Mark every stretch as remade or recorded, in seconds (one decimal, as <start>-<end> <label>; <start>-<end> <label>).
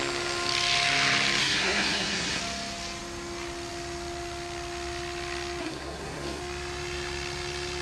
0.0-1.4 recorded; 1.4-2.4 remade; 2.4-5.6 recorded; 5.6-6.4 remade; 6.4-7.8 recorded